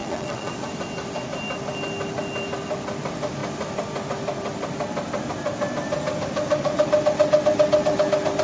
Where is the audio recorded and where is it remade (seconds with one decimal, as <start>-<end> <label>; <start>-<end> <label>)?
0.0-0.5 remade; 0.5-8.4 recorded